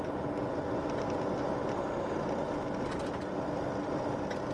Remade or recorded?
recorded